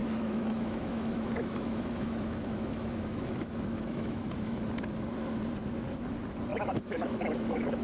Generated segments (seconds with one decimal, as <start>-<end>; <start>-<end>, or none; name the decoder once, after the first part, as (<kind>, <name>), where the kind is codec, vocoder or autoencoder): 0.0-4.7 (autoencoder, DAC-VAE); 6.5-7.8